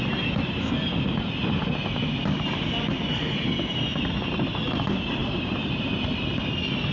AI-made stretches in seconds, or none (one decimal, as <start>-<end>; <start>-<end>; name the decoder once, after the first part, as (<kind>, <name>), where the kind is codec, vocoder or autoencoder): 3.9-4.6 (vocoder, BigVGAN v2); 5.2-6.4

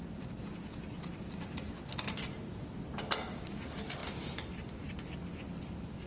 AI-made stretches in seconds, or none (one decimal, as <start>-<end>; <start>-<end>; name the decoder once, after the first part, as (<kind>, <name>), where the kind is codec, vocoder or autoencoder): 4.0-5.0 (vocoder, BigVGAN v2)

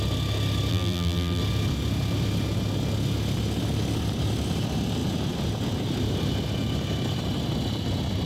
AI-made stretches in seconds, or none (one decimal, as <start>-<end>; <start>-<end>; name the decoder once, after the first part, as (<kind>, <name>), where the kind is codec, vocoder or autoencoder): 0.7-1.4 (vocoder, BigVGAN v2)

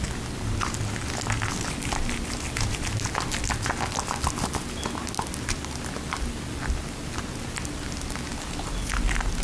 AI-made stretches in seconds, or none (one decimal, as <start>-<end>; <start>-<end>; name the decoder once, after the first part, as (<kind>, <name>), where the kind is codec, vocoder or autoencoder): none

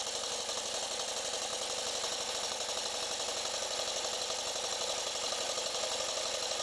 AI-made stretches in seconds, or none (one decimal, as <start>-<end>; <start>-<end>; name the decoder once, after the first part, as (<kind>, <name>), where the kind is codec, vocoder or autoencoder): none

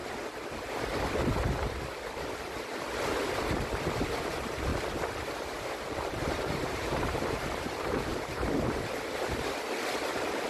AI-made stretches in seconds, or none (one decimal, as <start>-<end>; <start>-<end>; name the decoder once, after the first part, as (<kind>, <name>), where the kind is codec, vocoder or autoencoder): 4.2-4.7 (vocoder, BigVGAN v2); 6.1-8.1; 10.1-10.5

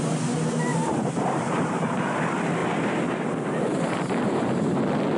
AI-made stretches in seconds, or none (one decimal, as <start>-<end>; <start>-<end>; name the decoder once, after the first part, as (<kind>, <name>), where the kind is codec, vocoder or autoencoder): 0.7-2.2 (vocoder, BigVGAN v2); 2.6-4.8